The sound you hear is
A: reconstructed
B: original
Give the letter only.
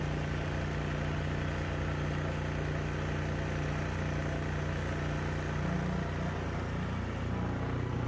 B